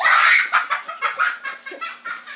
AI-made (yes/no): no